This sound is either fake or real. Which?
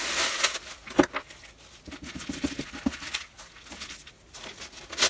real